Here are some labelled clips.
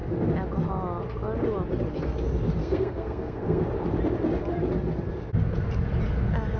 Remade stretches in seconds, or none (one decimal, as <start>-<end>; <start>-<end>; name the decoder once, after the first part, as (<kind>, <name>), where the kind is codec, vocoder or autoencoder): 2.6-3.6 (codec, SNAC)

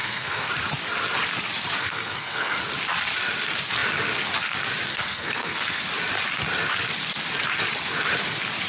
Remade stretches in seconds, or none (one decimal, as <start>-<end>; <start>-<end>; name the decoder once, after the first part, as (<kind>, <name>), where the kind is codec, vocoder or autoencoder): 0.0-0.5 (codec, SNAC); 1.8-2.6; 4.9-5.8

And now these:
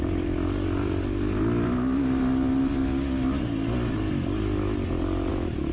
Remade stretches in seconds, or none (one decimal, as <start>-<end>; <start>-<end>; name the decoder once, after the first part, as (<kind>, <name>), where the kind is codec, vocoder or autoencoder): none

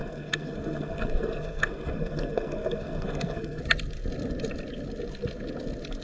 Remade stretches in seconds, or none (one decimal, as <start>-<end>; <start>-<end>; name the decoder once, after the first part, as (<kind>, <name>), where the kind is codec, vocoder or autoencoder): 0.0-3.6 (codec, SNAC)

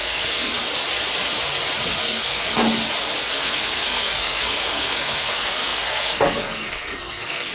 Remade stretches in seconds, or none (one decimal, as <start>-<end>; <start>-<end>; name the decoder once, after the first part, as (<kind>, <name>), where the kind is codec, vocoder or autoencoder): 0.0-0.5 (codec, SNAC); 2.0-2.6; 3.2-7.5

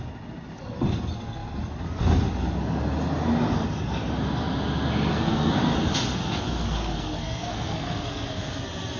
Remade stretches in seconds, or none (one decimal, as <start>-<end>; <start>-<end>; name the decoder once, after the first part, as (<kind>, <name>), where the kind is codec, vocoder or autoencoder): 5.1-5.6 (codec, SNAC); 6.3-8.6

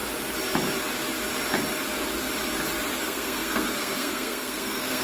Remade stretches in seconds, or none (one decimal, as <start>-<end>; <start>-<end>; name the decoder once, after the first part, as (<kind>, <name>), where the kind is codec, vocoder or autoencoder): 3.0-5.0 (codec, SNAC)